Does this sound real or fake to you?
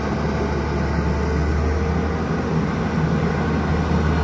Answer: real